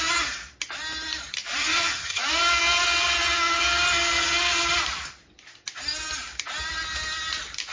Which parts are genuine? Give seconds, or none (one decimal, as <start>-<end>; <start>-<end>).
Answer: 0.0-1.6; 2.2-7.7